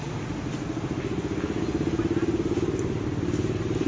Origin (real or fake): real